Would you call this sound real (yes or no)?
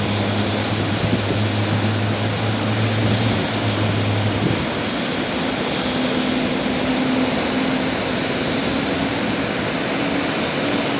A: yes